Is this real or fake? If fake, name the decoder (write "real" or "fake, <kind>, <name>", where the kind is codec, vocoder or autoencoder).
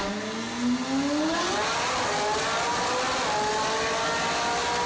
real